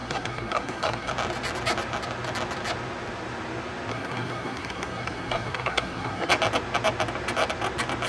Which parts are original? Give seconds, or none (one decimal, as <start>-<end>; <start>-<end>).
1.1-3.9; 6.3-8.1